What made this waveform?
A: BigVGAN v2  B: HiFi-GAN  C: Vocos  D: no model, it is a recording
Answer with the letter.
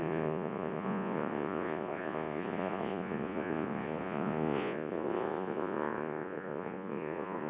C